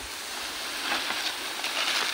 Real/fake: real